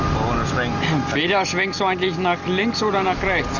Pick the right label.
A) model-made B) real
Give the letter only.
B